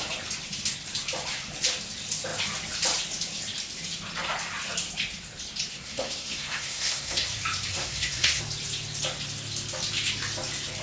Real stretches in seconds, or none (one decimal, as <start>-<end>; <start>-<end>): 0.0-5.7; 7.3-7.7; 8.4-10.8